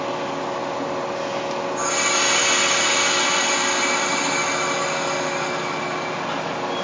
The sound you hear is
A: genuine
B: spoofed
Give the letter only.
A